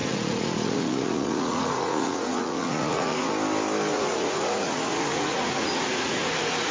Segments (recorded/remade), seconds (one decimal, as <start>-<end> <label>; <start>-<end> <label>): 0.0-3.3 remade; 3.3-3.9 recorded; 3.9-6.7 remade